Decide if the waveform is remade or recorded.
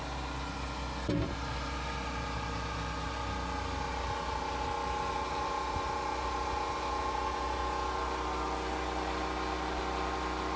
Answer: recorded